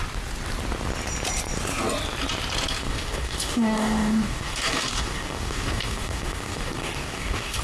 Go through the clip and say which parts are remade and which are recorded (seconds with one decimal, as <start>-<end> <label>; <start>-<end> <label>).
0.0-2.8 recorded; 2.8-7.6 remade